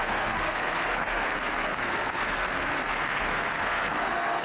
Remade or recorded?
remade